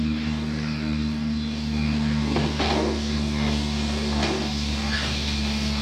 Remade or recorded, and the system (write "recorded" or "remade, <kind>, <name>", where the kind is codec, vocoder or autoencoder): remade, codec, DAC